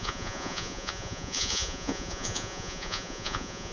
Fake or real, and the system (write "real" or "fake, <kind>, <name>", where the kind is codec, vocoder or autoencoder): fake, vocoder, Vocos